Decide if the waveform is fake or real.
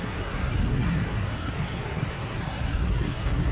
fake